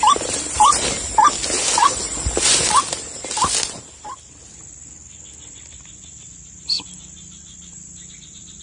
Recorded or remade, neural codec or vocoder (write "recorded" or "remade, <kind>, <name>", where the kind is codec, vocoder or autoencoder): recorded